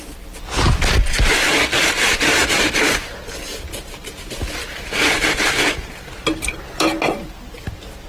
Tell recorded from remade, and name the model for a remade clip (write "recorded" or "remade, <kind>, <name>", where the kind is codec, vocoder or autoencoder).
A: recorded